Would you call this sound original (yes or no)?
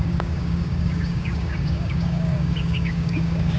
no